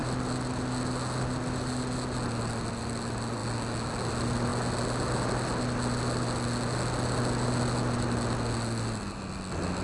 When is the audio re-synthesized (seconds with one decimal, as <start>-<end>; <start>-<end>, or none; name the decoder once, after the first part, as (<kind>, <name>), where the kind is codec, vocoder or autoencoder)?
none